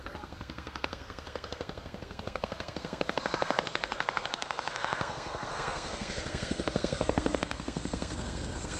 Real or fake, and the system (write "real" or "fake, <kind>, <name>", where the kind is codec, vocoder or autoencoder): fake, codec, SNAC